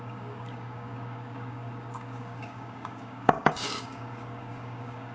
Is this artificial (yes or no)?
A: yes